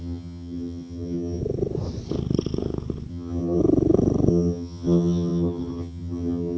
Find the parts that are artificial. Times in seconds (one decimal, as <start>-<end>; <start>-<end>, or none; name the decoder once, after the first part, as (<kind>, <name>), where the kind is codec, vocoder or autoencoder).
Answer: 0.0-1.4 (vocoder, HiFi-GAN); 3.1-3.6; 4.3-6.6